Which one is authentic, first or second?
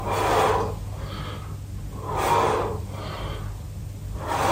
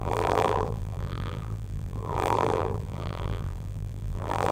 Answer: first